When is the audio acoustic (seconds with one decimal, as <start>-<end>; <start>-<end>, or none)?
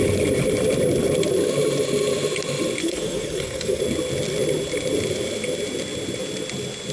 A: 0.0-2.8; 3.8-6.9